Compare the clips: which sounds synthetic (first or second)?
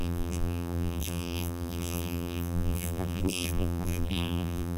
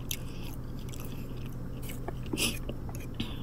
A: first